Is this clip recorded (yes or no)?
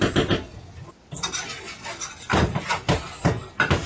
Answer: yes